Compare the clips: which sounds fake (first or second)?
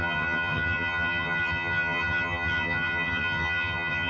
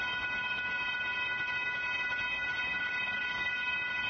first